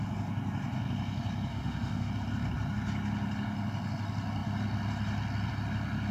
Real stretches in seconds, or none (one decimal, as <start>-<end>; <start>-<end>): 0.0-1.5; 2.1-6.1